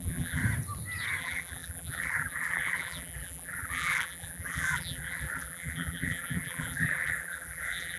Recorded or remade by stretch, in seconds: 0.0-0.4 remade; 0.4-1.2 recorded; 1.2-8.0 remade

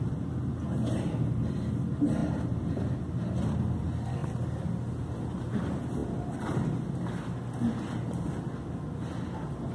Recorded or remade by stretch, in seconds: 0.0-2.2 recorded; 2.2-3.4 remade; 3.4-9.7 recorded